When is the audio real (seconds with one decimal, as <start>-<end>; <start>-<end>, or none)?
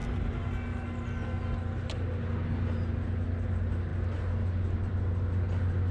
0.0-5.9